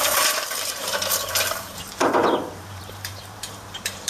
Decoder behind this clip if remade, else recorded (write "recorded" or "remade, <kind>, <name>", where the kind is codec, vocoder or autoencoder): remade, vocoder, BigVGAN v2